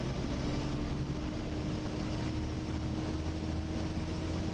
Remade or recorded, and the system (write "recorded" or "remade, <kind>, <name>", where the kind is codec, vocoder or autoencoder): recorded